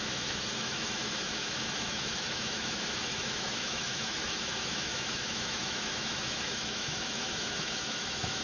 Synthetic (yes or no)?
yes